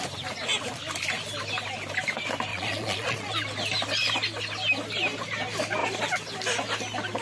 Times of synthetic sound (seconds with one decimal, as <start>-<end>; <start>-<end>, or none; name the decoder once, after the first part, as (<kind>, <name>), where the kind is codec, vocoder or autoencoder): 2.5-3.3 (vocoder, Vocos)